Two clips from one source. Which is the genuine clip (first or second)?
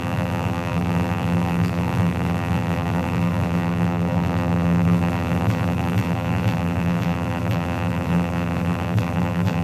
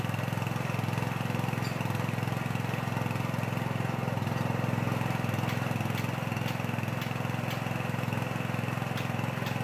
second